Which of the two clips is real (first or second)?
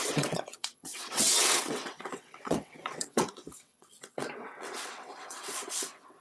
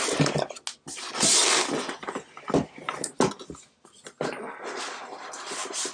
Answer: second